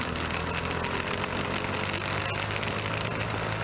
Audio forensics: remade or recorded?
recorded